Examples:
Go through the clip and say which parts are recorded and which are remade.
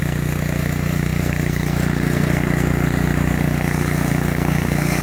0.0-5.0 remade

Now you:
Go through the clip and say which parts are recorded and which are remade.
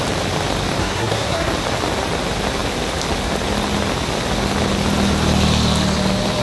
0.0-0.8 recorded; 0.8-1.5 remade; 1.5-6.4 recorded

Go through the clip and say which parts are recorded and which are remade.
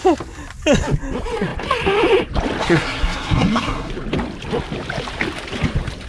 0.0-2.6 recorded; 2.6-3.9 remade; 3.9-6.1 recorded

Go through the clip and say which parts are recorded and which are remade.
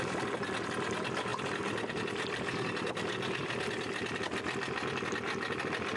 0.0-6.0 recorded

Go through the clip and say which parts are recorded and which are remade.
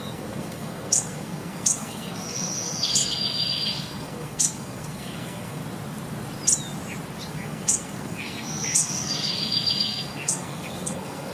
0.0-5.6 remade; 5.6-7.3 recorded; 7.3-11.3 remade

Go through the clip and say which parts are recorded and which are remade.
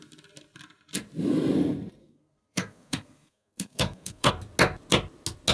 0.0-2.0 recorded; 2.0-4.3 remade; 4.3-5.5 recorded